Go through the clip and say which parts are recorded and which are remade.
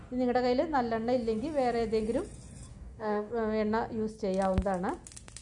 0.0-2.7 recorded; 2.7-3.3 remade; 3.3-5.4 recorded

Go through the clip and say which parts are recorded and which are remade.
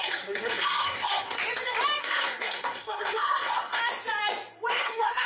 0.0-1.4 remade; 1.4-2.0 recorded; 2.0-3.8 remade; 3.8-4.7 recorded; 4.7-5.3 remade